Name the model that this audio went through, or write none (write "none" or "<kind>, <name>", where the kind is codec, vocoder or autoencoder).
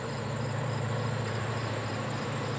vocoder, BigVGAN v2